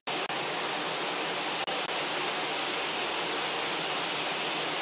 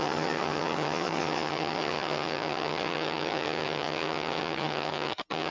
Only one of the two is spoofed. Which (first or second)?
second